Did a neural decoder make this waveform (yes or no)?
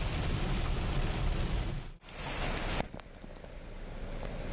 no